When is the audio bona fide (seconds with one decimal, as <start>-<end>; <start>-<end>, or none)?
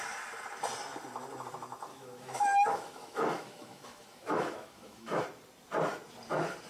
0.0-1.9; 5.2-6.7